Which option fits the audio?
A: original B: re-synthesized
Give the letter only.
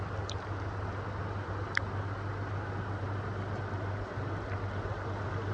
A